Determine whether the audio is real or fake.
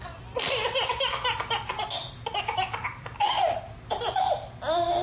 real